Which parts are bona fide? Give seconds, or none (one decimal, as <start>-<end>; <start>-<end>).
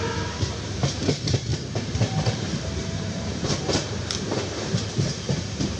none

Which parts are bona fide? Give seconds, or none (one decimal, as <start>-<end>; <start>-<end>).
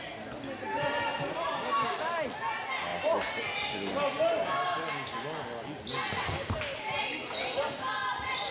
0.0-8.5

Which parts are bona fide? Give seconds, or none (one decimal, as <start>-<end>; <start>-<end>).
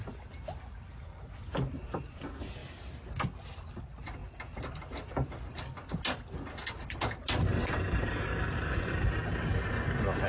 2.6-3.8; 4.2-7.7; 9.2-9.7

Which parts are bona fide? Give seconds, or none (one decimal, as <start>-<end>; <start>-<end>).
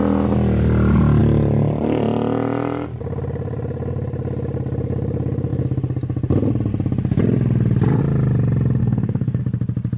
0.0-8.8; 9.4-10.0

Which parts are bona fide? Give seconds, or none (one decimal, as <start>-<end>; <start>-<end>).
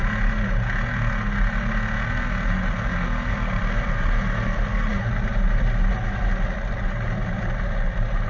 0.0-8.3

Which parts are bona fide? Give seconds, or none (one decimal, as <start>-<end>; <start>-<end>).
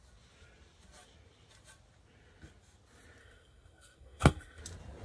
0.0-3.2; 4.6-5.0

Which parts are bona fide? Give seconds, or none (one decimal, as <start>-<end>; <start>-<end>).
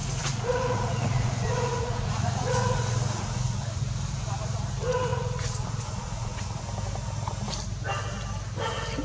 3.8-5.1; 6.6-9.0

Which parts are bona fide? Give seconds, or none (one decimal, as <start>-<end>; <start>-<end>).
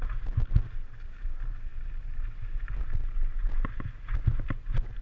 0.0-5.0